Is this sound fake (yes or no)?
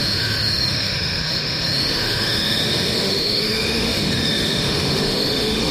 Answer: yes